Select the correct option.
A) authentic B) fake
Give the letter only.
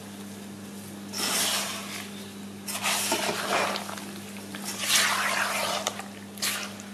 A